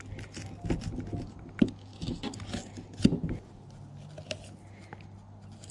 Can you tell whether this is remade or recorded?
recorded